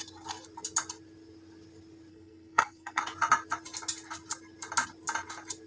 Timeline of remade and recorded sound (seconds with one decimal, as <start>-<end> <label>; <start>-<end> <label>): 0.0-2.1 recorded; 2.1-3.0 remade; 3.0-5.7 recorded